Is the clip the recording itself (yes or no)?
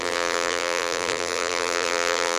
no